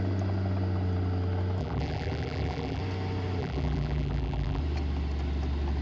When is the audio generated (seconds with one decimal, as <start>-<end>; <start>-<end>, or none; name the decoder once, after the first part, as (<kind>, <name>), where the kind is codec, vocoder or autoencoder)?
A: 1.6-2.8 (vocoder, BigVGAN v2); 3.4-4.6